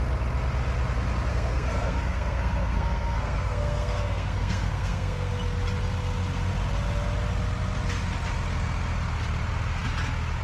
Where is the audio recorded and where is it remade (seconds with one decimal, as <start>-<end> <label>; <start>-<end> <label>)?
0.0-1.3 recorded; 1.3-5.3 remade; 5.3-10.4 recorded